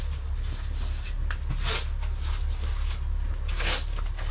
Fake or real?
real